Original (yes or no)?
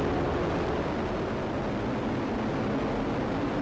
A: yes